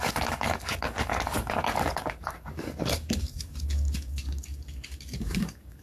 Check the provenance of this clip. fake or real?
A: fake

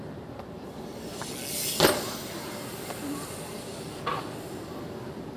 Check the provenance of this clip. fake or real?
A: real